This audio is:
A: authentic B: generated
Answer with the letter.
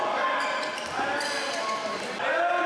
A